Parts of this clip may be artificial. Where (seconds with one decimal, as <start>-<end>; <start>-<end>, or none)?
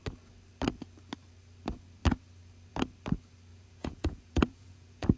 3.5-5.2